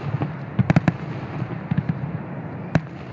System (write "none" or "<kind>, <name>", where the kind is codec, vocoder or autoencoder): vocoder, BigVGAN v2